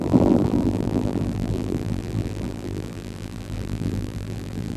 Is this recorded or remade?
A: remade